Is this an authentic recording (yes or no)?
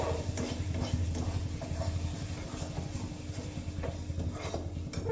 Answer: yes